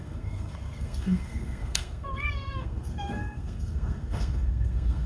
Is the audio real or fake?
fake